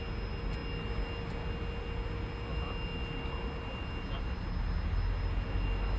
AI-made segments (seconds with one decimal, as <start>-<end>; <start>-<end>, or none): none